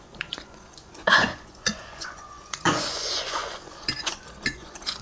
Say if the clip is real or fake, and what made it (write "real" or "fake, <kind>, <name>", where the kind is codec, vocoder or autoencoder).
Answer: fake, vocoder, Vocos